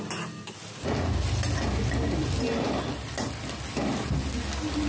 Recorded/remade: recorded